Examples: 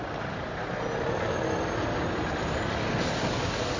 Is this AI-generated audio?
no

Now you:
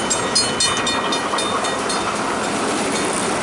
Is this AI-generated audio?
no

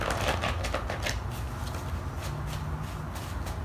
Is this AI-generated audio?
no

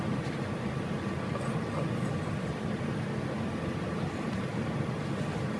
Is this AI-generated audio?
yes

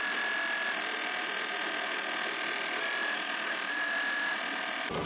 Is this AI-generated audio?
no